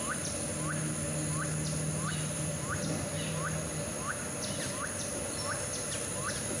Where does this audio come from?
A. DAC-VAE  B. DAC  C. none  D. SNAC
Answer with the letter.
C